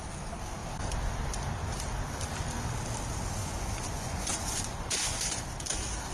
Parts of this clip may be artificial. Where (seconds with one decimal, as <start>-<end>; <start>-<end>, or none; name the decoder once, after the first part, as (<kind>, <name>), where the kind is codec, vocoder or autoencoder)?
3.4-5.4 (vocoder, Vocos)